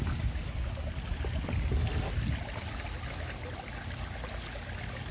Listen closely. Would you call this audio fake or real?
real